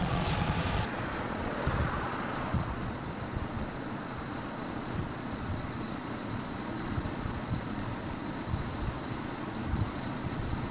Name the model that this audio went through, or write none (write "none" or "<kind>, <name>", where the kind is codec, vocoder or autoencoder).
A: vocoder, Vocos